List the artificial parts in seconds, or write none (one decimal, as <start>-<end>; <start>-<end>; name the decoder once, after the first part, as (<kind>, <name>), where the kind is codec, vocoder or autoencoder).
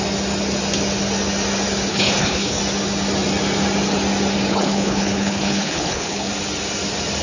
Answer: 1.9-2.6 (codec, HILCodec); 4.5-6.3